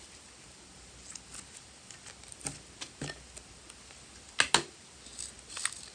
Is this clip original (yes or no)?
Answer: yes